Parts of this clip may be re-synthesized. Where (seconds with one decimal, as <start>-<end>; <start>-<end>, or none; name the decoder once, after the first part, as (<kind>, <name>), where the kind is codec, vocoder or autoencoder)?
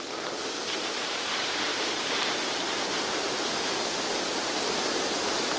1.7-5.1 (vocoder, BigVGAN v2)